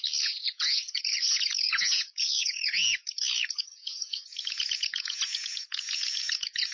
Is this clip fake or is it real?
fake